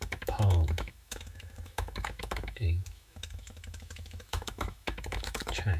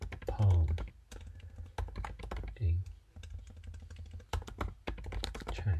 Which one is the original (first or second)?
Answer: second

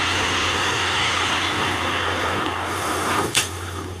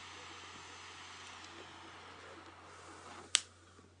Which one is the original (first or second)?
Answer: second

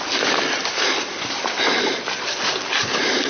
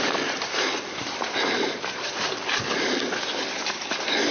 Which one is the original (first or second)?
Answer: first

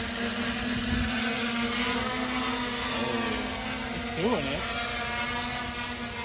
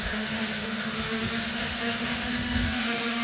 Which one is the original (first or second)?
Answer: first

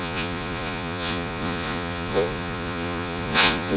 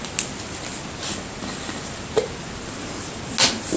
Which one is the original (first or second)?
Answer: second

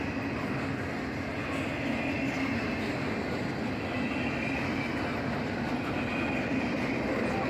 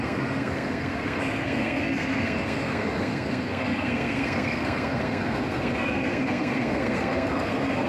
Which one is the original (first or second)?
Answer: first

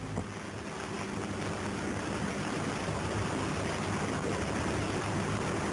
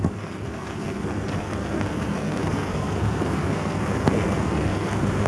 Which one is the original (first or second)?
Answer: first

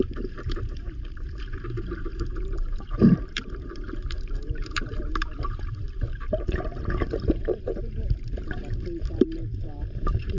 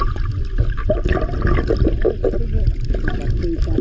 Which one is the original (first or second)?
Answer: second